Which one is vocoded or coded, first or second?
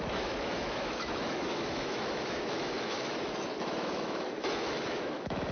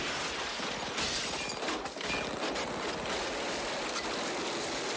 first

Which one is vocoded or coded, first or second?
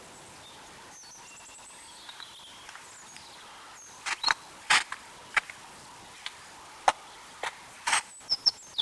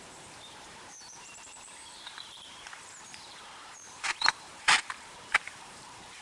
second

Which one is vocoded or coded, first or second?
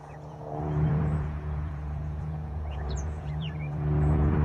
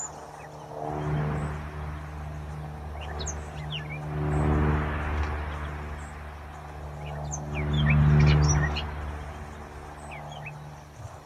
first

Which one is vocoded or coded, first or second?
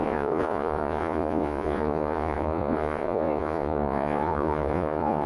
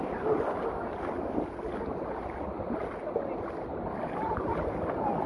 first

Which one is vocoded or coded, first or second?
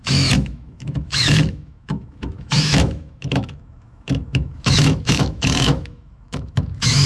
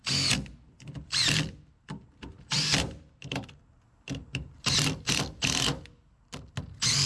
first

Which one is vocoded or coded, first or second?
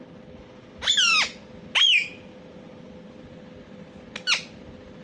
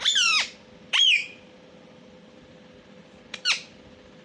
second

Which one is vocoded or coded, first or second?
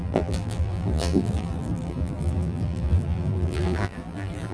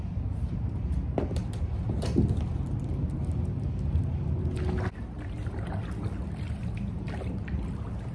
first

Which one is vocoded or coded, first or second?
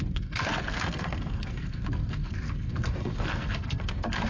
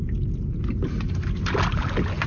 first